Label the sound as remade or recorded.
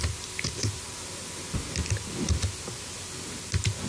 recorded